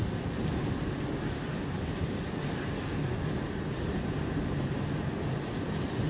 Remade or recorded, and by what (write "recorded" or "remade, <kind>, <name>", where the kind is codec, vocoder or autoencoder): recorded